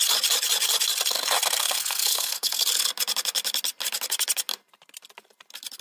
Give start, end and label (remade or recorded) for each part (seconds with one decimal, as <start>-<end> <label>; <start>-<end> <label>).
0.0-1.6 recorded; 1.6-2.6 remade; 2.6-5.8 recorded